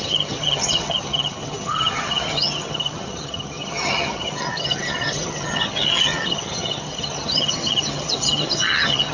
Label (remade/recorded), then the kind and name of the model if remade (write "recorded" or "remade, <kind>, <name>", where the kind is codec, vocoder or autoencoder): remade, vocoder, HiFi-GAN